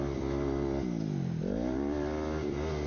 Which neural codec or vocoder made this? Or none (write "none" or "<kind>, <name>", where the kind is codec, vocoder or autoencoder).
none